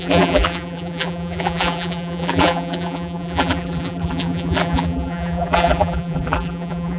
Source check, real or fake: fake